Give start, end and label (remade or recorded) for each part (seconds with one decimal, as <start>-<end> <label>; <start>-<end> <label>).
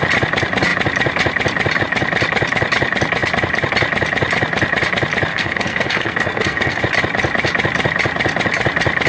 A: 0.0-5.3 recorded; 5.3-6.8 remade; 6.8-9.1 recorded